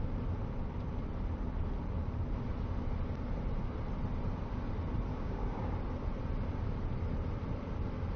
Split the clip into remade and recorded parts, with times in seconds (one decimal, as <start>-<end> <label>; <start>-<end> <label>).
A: 0.0-5.1 recorded; 5.1-5.7 remade; 5.7-8.2 recorded